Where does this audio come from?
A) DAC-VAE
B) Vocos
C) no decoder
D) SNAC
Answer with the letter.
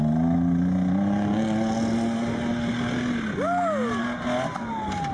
C